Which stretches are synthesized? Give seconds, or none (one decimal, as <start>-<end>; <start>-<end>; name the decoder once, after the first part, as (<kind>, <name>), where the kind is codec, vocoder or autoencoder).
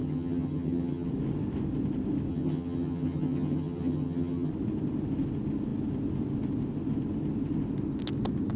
0.0-1.1 (vocoder, HiFi-GAN); 2.3-4.5